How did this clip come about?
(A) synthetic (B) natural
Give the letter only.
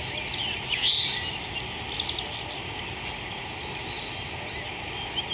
B